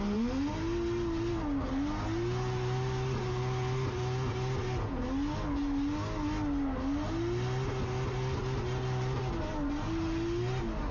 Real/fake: real